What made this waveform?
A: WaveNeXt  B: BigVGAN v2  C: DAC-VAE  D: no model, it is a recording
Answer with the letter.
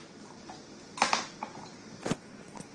D